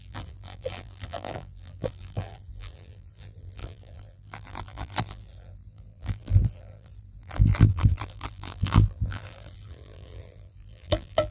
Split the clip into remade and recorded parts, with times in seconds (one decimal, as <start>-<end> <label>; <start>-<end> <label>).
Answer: 0.0-11.3 remade